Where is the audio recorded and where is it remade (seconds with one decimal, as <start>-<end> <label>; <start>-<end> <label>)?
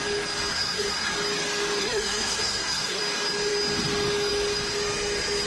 0.0-0.5 recorded; 0.5-1.1 remade; 1.1-1.8 recorded; 1.8-3.0 remade; 3.0-5.5 recorded